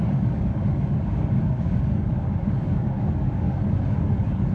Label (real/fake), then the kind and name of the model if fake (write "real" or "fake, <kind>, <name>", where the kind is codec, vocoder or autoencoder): fake, codec, DAC